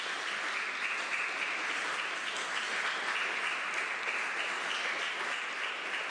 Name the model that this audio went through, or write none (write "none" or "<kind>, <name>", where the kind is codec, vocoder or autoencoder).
none